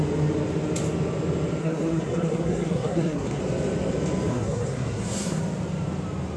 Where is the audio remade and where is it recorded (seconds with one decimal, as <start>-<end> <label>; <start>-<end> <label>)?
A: 0.0-1.6 recorded; 1.6-3.4 remade; 3.4-4.3 recorded; 4.3-5.4 remade; 5.4-6.4 recorded